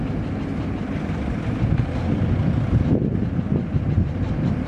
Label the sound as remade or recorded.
recorded